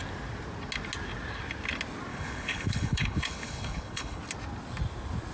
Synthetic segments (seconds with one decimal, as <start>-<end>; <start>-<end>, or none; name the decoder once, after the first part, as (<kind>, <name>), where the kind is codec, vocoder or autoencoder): 2.1-4.2 (codec, HILCodec)

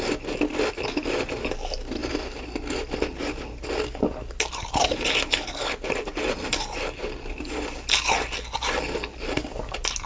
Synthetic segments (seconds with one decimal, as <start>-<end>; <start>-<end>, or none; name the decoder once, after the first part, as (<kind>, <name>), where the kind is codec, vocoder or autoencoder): none

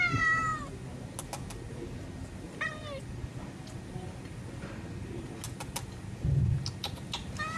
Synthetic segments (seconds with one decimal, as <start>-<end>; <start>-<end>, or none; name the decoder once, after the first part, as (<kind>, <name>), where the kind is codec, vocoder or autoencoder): none

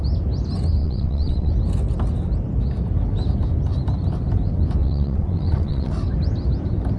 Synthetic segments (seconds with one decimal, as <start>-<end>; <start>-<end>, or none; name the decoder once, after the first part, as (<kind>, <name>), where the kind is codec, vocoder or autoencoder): 0.8-1.5 (vocoder, WaveNeXt); 4.8-5.9

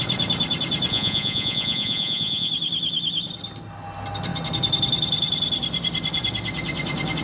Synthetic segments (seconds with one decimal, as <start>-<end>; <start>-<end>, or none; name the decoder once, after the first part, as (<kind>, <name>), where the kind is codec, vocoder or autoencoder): 0.9-2.5 (vocoder, Vocos)

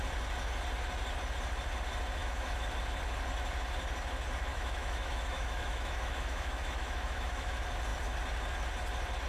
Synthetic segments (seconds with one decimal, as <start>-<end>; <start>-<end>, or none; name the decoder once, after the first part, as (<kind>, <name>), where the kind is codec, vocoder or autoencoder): 2.2-2.7 (autoencoder, DAC-VAE); 4.5-7.5

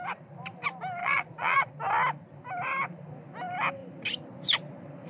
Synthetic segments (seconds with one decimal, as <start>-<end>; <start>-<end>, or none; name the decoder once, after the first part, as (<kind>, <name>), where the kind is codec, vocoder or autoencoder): 1.0-1.7 (vocoder, Vocos)

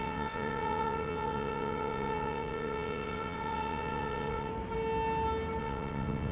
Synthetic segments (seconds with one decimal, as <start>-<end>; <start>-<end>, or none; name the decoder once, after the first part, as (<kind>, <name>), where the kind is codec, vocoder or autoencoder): 0.0-4.5 (vocoder, WaveNeXt); 5.6-6.3